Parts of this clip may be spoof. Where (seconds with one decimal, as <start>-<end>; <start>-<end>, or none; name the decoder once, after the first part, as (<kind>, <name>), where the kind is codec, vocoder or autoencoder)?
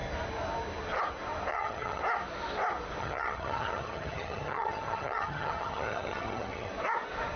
1.5-2.0 (vocoder, HiFi-GAN); 3.0-6.7